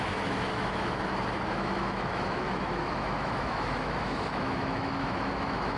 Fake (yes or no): yes